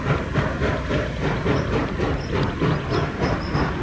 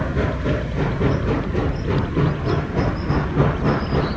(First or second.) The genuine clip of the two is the second